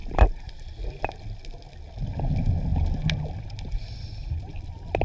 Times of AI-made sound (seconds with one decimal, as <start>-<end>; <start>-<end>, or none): none

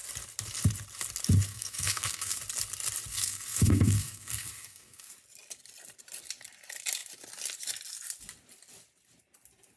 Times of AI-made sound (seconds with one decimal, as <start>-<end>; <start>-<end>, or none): 1.5-2.4; 3.1-5.1